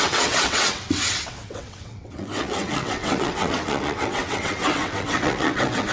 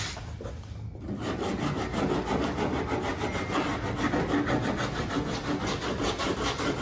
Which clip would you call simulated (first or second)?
first